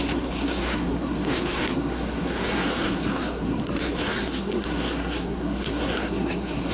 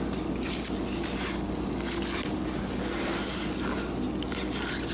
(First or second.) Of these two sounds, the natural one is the second